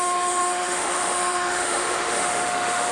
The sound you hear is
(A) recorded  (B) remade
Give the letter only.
B